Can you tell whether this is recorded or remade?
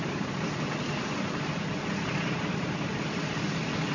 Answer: recorded